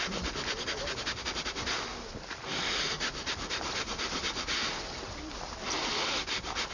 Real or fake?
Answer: real